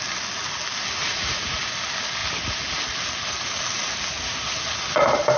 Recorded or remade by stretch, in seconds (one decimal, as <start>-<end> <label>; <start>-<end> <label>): 0.0-1.0 recorded; 1.0-1.6 remade; 1.6-5.4 recorded